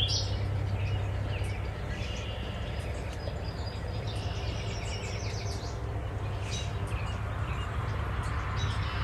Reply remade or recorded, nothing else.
recorded